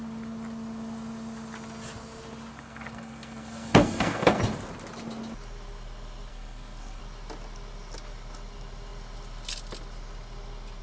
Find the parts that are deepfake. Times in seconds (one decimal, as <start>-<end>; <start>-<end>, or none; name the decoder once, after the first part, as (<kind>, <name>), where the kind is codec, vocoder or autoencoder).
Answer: 2.5-4.4 (codec, SNAC); 6.3-7.0